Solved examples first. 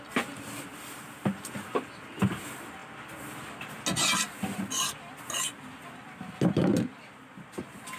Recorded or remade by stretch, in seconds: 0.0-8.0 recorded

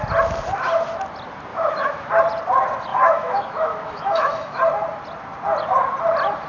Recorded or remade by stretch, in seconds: 0.0-1.5 recorded; 1.5-2.1 remade; 2.1-2.9 recorded; 2.9-4.6 remade; 4.6-6.5 recorded

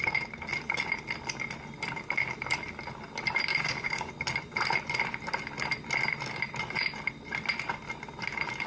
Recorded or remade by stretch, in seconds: 0.0-3.5 recorded; 3.5-4.1 remade; 4.1-8.7 recorded